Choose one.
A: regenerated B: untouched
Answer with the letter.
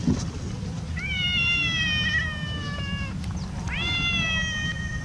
B